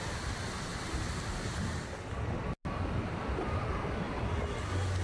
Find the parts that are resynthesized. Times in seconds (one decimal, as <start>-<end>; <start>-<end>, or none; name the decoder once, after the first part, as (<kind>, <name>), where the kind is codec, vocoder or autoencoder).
none